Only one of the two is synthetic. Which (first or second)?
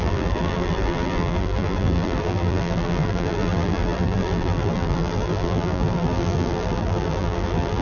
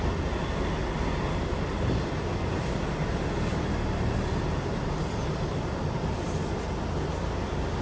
first